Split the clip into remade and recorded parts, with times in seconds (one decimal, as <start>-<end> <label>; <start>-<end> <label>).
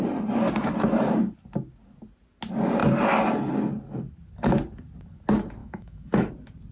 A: 0.0-5.6 recorded; 5.6-6.3 remade; 6.3-6.7 recorded